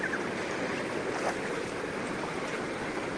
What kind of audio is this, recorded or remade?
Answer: recorded